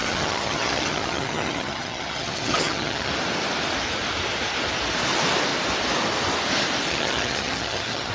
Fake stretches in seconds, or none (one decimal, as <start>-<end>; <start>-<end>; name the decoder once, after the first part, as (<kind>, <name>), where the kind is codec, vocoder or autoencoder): 0.0-3.1 (vocoder, HiFi-GAN); 6.9-8.1